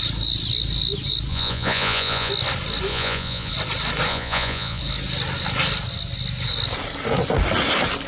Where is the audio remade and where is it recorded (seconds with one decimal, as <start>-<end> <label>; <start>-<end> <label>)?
0.0-1.3 recorded; 1.3-2.3 remade; 2.3-2.9 recorded; 2.9-3.5 remade; 3.5-4.1 recorded; 4.1-4.8 remade; 4.8-8.1 recorded